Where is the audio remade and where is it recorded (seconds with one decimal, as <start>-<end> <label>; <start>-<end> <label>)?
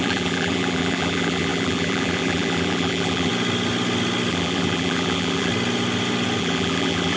0.0-3.3 remade; 3.3-4.3 recorded; 4.3-5.5 remade; 5.5-6.4 recorded; 6.4-7.2 remade